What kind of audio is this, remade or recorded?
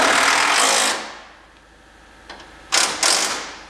recorded